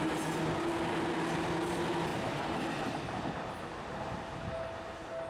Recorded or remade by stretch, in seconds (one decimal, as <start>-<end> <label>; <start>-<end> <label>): 0.0-5.3 recorded